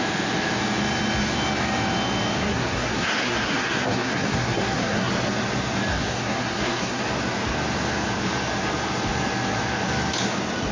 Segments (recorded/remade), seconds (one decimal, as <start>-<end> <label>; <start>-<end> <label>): 0.0-2.4 recorded; 2.4-5.1 remade; 5.1-5.9 recorded; 5.9-7.0 remade; 7.0-10.7 recorded